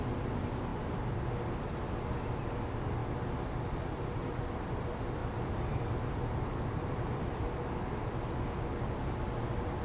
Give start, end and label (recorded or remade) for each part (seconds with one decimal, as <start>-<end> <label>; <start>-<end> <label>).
0.0-5.2 recorded; 5.2-7.6 remade; 7.6-9.8 recorded